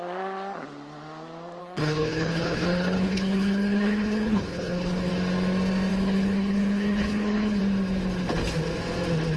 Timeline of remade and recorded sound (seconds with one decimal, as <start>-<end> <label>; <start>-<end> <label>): 0.0-1.6 recorded; 1.6-5.1 remade; 5.1-5.9 recorded; 5.9-7.6 remade; 7.6-9.4 recorded